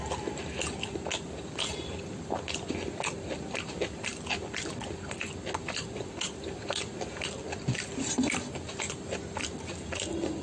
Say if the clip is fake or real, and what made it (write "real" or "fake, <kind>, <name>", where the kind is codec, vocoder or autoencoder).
real